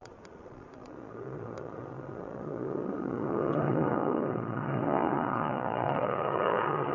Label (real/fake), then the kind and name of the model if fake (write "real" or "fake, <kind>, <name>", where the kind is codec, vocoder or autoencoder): fake, vocoder, Vocos